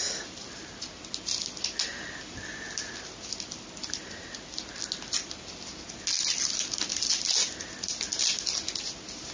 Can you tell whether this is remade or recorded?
recorded